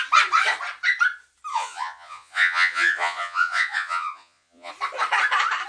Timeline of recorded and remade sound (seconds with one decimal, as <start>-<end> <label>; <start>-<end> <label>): 0.0-1.5 recorded; 1.5-4.7 remade; 4.7-5.7 recorded